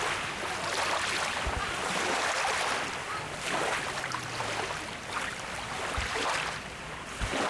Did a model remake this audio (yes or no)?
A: no